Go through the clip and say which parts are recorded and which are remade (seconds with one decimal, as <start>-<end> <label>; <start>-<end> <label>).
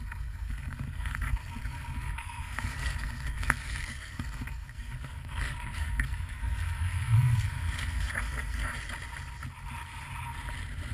0.0-8.7 remade; 8.7-10.9 recorded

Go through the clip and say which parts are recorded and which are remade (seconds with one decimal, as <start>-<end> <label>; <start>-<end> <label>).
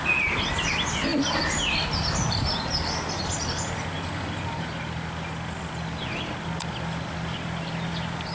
0.0-8.3 recorded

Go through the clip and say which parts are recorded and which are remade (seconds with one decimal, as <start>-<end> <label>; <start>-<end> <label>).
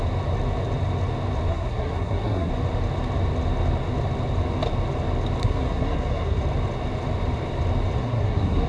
0.0-1.5 recorded; 1.5-2.5 remade; 2.5-5.4 recorded; 5.4-6.4 remade; 6.4-8.0 recorded; 8.0-8.7 remade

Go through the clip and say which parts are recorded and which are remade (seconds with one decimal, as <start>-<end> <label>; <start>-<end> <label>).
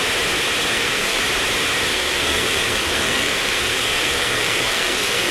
0.0-0.7 recorded; 0.7-1.2 remade; 1.2-1.9 recorded; 1.9-5.3 remade